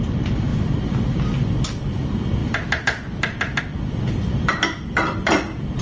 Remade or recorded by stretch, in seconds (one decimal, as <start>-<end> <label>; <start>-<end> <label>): 0.0-0.5 remade; 0.5-1.9 recorded; 1.9-5.8 remade